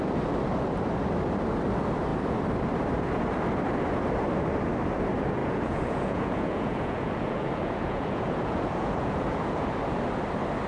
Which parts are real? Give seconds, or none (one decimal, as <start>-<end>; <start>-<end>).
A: 0.0-5.4; 9.7-10.7